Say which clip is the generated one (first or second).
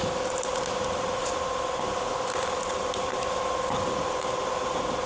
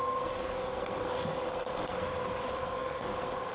second